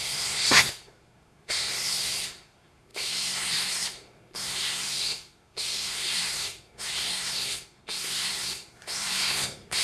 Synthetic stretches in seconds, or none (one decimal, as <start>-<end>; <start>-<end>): 0.0-9.8